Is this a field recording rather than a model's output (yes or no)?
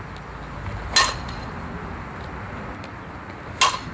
yes